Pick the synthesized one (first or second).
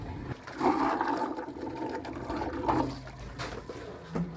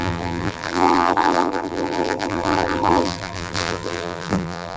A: second